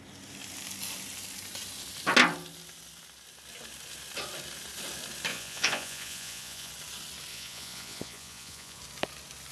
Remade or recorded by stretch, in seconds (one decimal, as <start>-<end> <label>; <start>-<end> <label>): 0.0-5.3 recorded; 5.3-6.7 remade; 6.7-7.3 recorded; 7.3-8.8 remade; 8.8-9.5 recorded